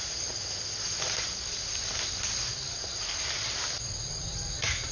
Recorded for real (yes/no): yes